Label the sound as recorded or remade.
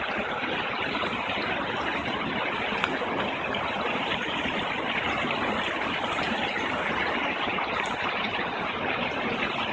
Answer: recorded